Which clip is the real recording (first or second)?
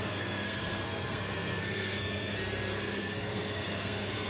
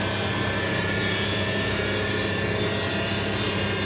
second